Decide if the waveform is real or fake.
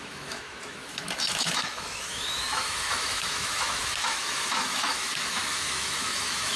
fake